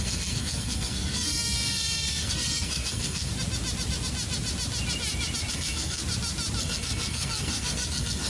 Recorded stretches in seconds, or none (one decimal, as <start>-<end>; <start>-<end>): 3.3-5.5; 6.0-6.6